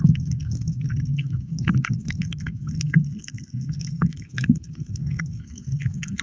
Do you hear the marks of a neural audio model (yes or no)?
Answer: yes